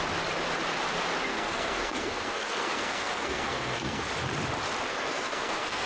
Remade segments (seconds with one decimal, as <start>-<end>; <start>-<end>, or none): 1.3-4.1; 4.9-5.9

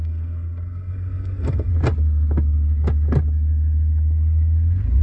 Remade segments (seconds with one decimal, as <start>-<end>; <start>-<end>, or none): 0.0-1.7

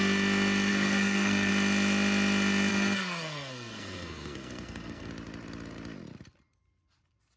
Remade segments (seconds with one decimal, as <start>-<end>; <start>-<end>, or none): 0.7-1.5; 2.7-5.1